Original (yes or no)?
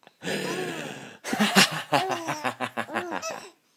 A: yes